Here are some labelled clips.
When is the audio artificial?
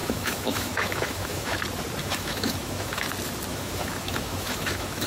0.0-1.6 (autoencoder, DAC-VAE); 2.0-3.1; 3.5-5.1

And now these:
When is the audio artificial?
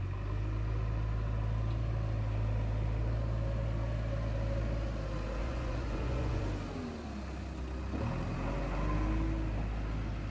5.4-6.4 (vocoder, Vocos)